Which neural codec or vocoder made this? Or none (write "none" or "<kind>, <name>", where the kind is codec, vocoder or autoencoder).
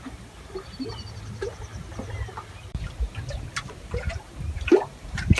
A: vocoder, BigVGAN v2